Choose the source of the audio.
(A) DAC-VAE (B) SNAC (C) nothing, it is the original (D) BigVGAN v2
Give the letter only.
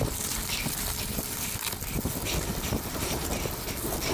C